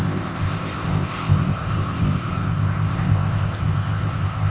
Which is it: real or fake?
fake